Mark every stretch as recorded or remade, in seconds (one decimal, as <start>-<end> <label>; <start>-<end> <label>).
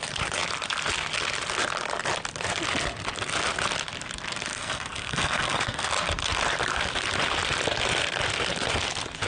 0.0-4.5 recorded; 4.5-5.9 remade; 5.9-9.3 recorded